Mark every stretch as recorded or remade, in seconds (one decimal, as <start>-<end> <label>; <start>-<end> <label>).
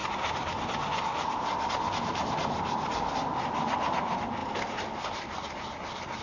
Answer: 0.0-0.5 remade; 0.5-6.2 recorded